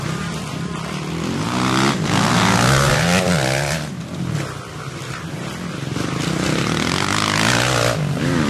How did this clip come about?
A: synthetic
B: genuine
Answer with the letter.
B